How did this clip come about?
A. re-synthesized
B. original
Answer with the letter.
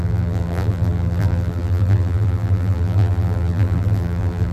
A